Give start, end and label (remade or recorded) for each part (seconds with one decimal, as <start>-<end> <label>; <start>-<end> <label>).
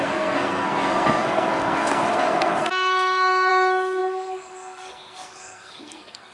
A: 0.0-6.3 remade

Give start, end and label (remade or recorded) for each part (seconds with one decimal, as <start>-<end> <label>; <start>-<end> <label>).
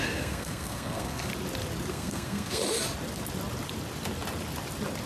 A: 0.0-1.3 remade; 1.3-1.9 recorded; 1.9-2.6 remade; 2.6-5.1 recorded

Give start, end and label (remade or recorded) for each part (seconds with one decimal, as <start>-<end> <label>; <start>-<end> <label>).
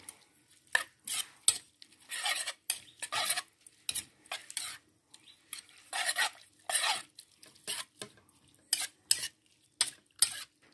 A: 0.0-10.7 recorded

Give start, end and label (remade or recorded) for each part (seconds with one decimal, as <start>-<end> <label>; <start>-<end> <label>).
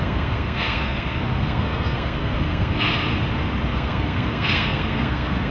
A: 0.0-3.1 remade; 3.1-3.7 recorded; 3.7-5.5 remade